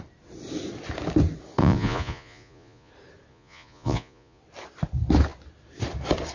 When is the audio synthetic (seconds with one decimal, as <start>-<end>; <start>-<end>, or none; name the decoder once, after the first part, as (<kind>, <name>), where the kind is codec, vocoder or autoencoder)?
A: 1.6-2.9 (vocoder, Vocos); 3.3-4.4